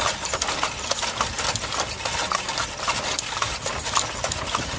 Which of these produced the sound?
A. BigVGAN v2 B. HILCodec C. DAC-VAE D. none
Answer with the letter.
D